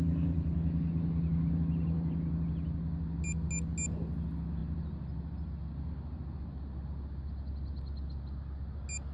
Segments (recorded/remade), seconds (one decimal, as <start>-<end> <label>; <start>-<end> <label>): 0.0-9.1 recorded